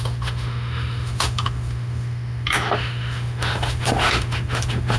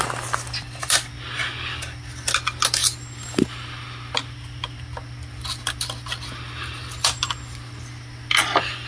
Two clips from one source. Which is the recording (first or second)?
second